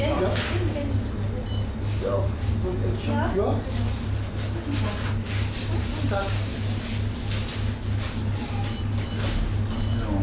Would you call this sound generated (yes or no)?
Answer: no